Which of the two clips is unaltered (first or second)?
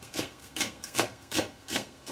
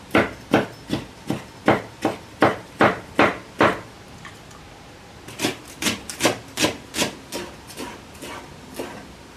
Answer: second